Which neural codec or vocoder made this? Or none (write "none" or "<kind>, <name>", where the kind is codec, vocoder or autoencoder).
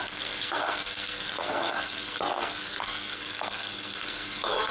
codec, SNAC